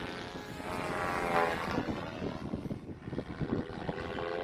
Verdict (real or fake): real